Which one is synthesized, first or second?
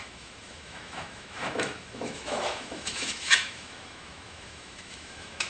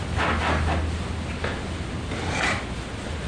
first